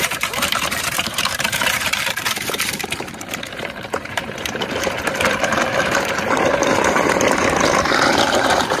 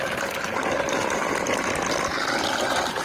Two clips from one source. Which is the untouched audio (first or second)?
second